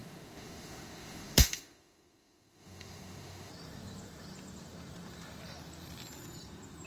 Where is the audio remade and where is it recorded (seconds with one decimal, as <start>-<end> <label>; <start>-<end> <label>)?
0.0-3.5 remade; 3.5-6.9 recorded